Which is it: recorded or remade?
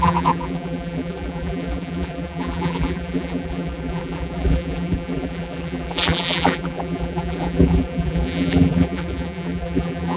remade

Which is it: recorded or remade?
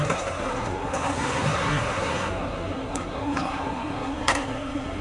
remade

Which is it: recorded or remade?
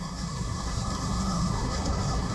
remade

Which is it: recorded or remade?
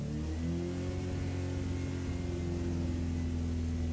recorded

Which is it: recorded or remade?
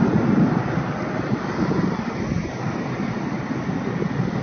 recorded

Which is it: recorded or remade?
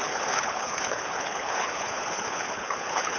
remade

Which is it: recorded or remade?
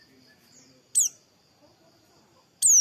recorded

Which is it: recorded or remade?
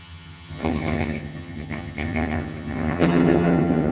remade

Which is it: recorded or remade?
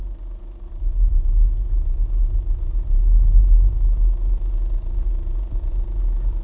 recorded